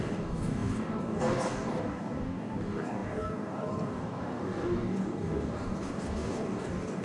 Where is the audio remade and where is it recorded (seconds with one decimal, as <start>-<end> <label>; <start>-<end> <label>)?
0.0-7.0 remade